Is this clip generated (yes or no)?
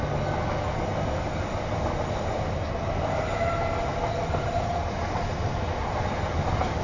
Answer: no